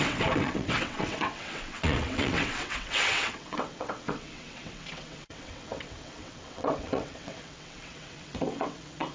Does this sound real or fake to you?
fake